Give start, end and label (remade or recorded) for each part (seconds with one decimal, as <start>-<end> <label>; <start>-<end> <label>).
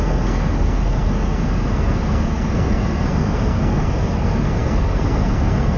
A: 0.0-5.8 remade